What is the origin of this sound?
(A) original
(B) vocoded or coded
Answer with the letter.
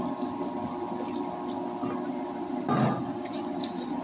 A